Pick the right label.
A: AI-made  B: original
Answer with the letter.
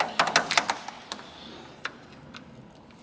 B